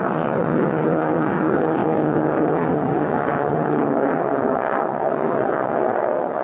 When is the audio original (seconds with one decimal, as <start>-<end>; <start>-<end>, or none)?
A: none